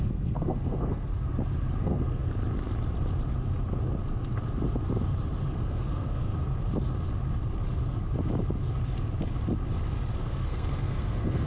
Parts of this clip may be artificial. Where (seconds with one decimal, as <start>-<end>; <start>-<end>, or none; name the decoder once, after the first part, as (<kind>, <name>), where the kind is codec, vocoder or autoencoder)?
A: 0.0-1.1 (codec, SNAC); 1.8-2.3; 5.6-6.3; 10.2-11.5